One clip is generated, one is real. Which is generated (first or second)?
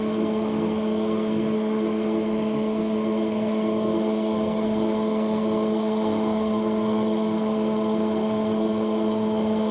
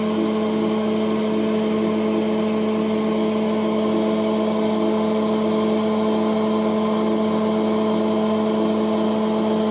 first